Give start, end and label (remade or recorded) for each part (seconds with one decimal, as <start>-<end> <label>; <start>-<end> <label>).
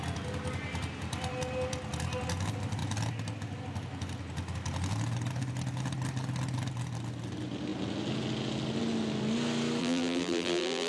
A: 0.0-9.8 recorded; 9.8-10.9 remade